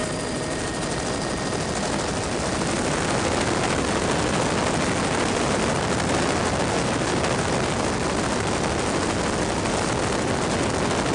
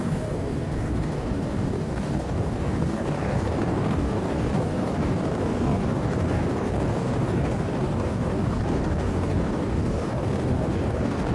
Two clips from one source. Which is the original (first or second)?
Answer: first